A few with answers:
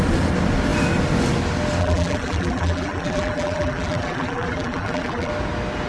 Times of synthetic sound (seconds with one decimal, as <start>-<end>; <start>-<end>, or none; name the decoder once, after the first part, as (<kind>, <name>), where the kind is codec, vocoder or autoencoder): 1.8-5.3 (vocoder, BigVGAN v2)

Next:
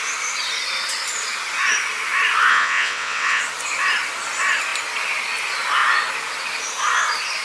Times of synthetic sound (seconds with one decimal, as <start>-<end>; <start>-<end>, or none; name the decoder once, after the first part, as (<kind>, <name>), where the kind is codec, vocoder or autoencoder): 2.5-3.4 (vocoder, WaveNeXt)

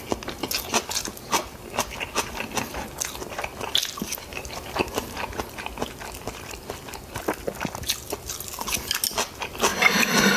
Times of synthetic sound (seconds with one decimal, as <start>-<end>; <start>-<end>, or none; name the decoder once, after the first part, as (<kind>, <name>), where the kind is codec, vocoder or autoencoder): 4.3-4.8 (vocoder, BigVGAN v2); 9.7-10.4

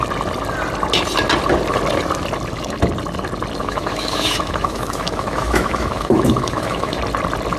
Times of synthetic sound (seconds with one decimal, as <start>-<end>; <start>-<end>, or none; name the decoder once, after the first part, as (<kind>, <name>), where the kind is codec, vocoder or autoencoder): 3.6-7.0 (autoencoder, DAC-VAE)

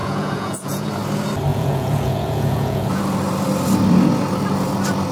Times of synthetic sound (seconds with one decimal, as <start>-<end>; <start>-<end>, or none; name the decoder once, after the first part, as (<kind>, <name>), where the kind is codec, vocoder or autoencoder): 0.0-0.9 (vocoder, Vocos); 1.5-3.0